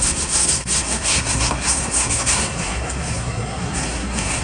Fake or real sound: fake